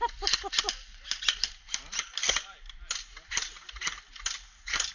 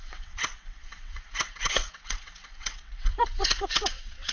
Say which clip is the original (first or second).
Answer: first